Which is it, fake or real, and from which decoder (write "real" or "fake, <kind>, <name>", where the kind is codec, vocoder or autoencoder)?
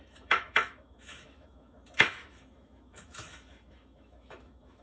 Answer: fake, autoencoder, DAC-VAE